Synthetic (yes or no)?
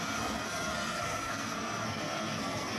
yes